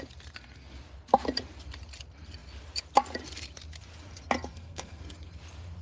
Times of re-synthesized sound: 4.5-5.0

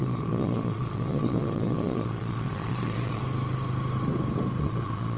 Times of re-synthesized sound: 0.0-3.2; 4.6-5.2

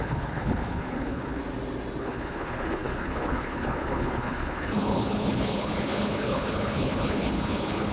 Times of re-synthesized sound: 0.0-1.4; 2.0-7.9

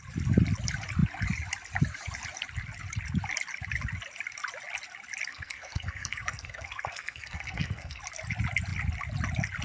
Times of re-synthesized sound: 5.3-8.0

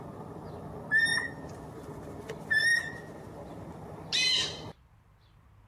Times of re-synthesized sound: none

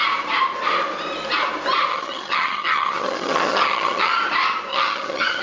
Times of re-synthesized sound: 1.9-4.2; 4.7-5.4